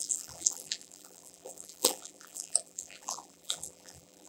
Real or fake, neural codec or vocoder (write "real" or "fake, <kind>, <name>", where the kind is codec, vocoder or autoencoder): fake, vocoder, BigVGAN v2